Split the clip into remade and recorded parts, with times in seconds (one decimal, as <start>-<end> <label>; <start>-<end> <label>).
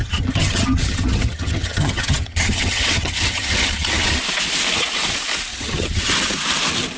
0.0-4.2 remade; 4.2-5.5 recorded; 5.5-6.1 remade; 6.1-7.0 recorded